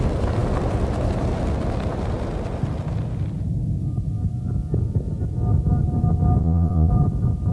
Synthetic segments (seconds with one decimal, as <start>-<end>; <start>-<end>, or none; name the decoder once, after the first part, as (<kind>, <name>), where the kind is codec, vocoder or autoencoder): 6.4-6.9 (vocoder, Vocos)